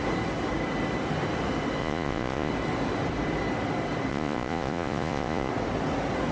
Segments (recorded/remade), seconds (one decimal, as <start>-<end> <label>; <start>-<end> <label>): 0.0-1.8 recorded; 1.8-2.5 remade; 2.5-4.1 recorded; 4.1-5.5 remade; 5.5-6.3 recorded